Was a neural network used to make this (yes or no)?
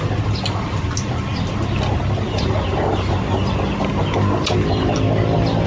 no